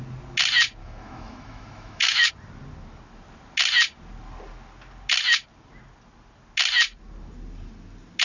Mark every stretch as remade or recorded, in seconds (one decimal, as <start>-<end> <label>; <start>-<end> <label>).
0.0-0.8 recorded; 0.8-2.3 remade; 2.3-8.2 recorded